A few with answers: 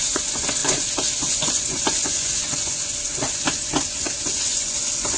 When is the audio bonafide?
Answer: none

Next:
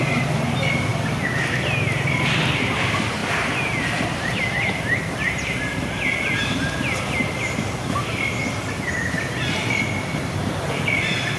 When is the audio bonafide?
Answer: 0.0-11.4

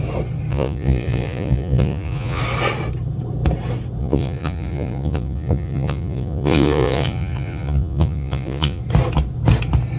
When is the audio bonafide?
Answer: 0.0-0.5; 2.4-4.0; 8.8-10.0

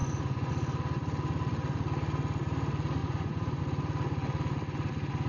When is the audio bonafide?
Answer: 0.5-3.0; 3.6-5.3

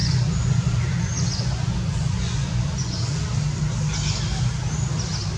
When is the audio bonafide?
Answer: 3.2-5.4